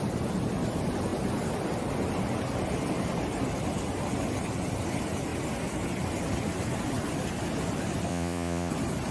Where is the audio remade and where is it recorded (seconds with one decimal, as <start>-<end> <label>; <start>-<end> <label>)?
0.0-8.1 recorded; 8.1-8.7 remade; 8.7-9.1 recorded